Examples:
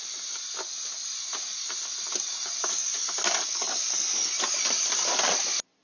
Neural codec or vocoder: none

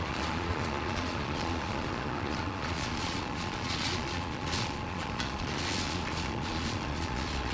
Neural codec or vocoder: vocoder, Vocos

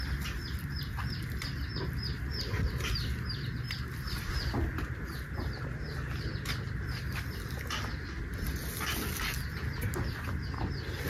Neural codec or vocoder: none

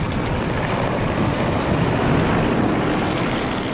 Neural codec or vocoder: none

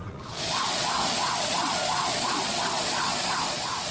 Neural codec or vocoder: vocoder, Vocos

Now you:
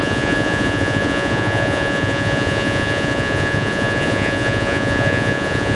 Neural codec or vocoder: vocoder, Vocos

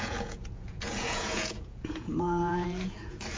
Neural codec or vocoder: vocoder, Vocos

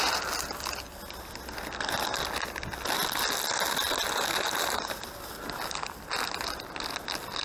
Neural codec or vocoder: none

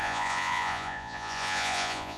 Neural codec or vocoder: vocoder, Vocos